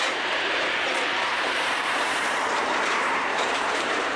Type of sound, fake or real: fake